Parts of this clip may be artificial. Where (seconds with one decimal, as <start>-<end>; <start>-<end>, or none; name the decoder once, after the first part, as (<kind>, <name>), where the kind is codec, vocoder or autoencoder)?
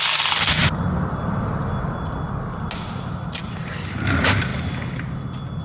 none